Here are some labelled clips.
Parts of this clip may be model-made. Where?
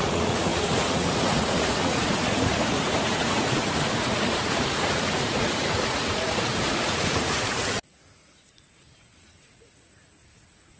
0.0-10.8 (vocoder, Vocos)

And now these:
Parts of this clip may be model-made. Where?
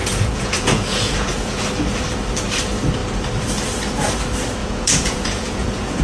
0.0-1.6 (vocoder, Vocos); 4.6-6.0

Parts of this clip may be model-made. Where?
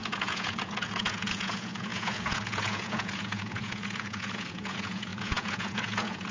0.0-6.3 (vocoder, Vocos)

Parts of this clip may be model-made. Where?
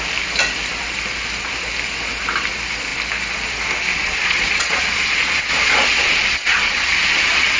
3.9-7.6 (vocoder, Vocos)